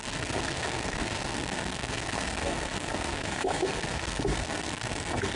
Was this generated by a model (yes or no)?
yes